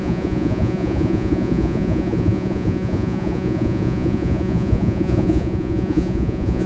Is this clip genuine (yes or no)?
no